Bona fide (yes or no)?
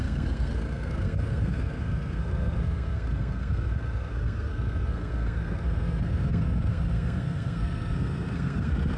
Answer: no